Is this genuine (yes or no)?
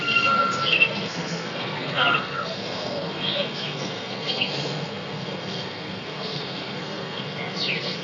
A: no